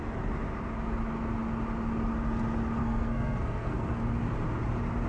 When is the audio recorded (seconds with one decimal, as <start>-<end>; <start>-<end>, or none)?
0.0-2.8; 4.0-5.1